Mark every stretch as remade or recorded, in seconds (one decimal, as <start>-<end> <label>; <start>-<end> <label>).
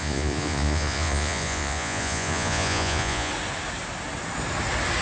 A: 0.0-3.3 remade; 3.3-5.0 recorded